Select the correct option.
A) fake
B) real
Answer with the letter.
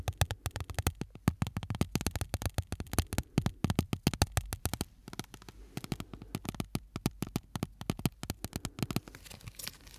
B